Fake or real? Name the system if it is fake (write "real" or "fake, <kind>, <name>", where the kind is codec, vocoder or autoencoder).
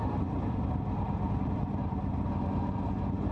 real